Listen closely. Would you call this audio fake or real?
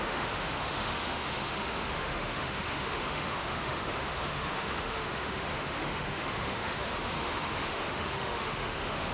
fake